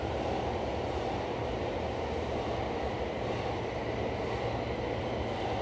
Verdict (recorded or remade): recorded